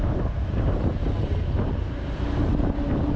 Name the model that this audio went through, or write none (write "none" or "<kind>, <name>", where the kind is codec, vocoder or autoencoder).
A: vocoder, BigVGAN v2